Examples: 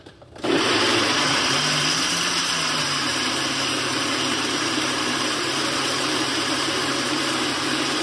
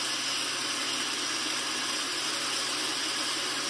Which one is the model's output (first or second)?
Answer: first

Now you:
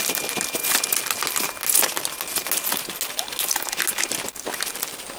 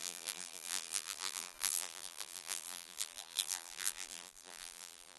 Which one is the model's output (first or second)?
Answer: second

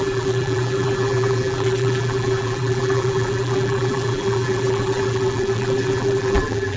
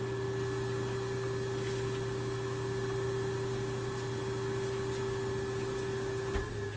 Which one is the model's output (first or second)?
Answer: first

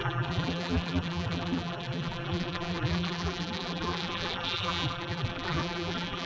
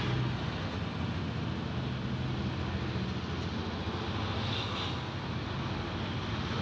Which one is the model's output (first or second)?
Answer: first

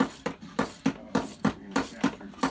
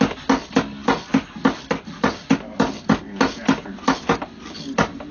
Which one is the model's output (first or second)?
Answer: first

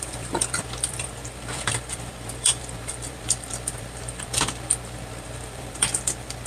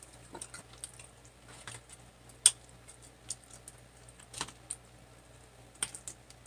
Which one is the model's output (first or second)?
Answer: first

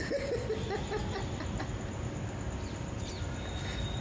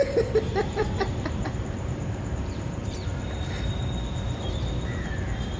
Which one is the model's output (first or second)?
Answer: second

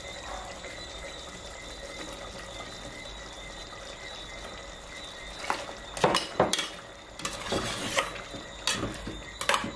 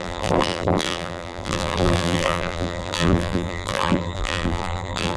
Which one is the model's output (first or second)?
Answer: second